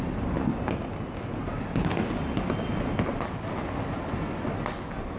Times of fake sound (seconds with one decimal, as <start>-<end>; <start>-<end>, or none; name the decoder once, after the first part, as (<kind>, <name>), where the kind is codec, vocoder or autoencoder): none